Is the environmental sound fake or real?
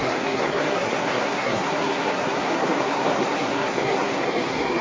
fake